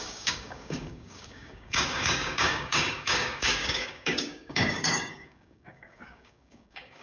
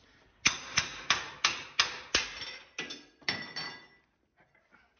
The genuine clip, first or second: second